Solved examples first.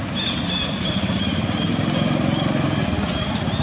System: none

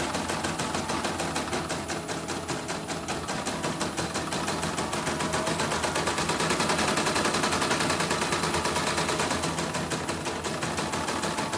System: none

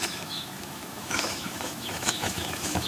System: autoencoder, DAC-VAE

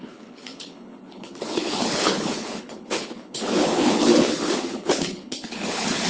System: codec, HILCodec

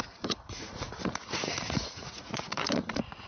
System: vocoder, Vocos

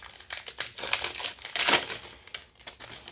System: none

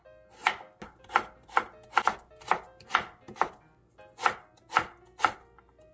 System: none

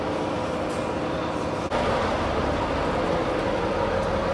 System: none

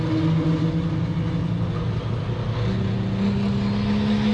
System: none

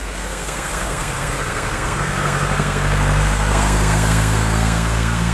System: codec, SNAC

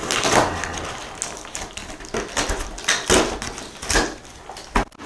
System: none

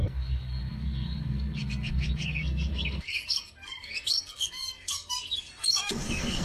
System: codec, SNAC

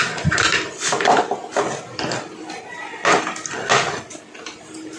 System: none